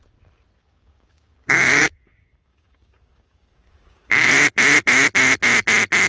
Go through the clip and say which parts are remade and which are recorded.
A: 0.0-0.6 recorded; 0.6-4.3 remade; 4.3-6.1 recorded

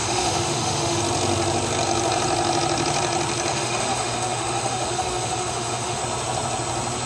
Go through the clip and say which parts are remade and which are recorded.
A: 0.0-1.0 remade; 1.0-3.5 recorded; 3.5-6.0 remade; 6.0-7.1 recorded

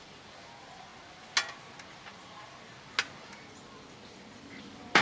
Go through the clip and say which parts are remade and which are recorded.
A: 0.0-5.0 recorded

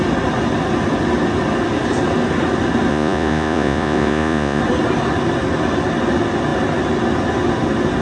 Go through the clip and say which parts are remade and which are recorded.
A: 0.0-2.9 recorded; 2.9-4.6 remade; 4.6-8.0 recorded

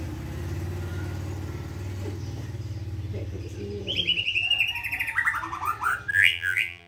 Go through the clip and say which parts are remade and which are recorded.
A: 0.0-6.1 recorded; 6.1-6.9 remade

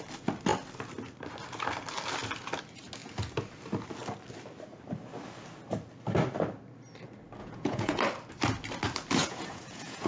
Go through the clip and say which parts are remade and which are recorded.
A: 0.0-7.4 recorded; 7.4-8.0 remade; 8.0-9.2 recorded; 9.2-10.1 remade

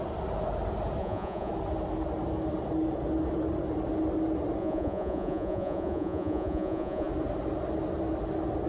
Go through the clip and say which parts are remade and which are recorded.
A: 0.0-1.0 recorded; 1.0-1.5 remade; 1.5-4.6 recorded; 4.6-7.1 remade; 7.1-8.7 recorded

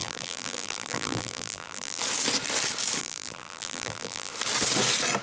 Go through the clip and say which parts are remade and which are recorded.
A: 0.0-2.0 remade; 2.0-3.0 recorded; 3.0-4.3 remade; 4.3-5.2 recorded